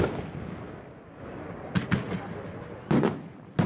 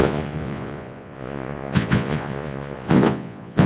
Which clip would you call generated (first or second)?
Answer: second